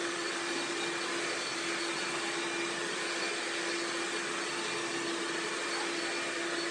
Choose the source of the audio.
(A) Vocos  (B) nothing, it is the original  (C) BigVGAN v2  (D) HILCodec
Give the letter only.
B